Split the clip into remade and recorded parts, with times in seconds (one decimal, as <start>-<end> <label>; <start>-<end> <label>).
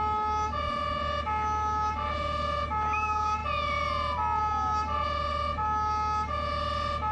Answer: 0.0-7.1 recorded